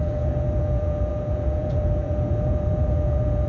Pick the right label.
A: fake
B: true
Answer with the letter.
A